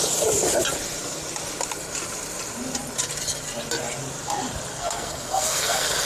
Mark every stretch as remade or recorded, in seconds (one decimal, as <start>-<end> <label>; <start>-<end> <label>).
0.0-4.7 recorded; 4.7-6.1 remade